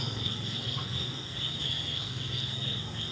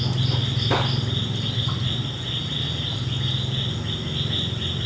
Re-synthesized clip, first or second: first